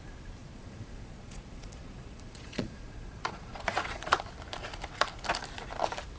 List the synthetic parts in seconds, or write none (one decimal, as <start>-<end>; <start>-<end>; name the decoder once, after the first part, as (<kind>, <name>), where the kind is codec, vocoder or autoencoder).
0.4-4.1 (vocoder, Vocos)